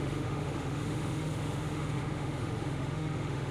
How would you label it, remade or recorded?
remade